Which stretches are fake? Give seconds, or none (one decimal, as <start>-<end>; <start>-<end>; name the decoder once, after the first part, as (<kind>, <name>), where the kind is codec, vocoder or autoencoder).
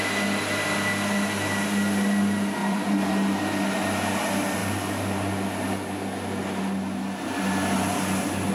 2.6-3.1 (vocoder, BigVGAN v2)